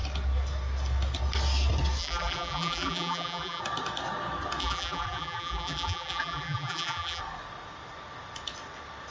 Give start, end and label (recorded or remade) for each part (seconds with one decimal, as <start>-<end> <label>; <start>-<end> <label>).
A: 0.0-2.0 recorded; 2.0-3.6 remade; 3.6-4.6 recorded; 4.6-7.2 remade; 7.2-9.1 recorded